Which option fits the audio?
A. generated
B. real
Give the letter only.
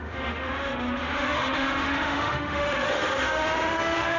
A